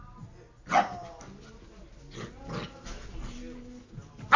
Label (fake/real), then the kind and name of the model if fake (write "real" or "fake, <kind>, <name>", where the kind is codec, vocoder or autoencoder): real